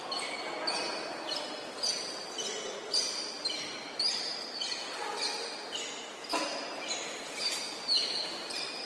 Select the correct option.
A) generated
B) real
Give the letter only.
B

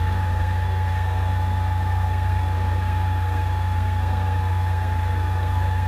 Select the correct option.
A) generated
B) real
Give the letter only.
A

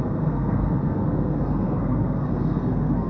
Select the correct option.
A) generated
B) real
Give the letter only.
A